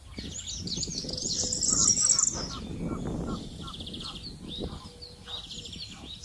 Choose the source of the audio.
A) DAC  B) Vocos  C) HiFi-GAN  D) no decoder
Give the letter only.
D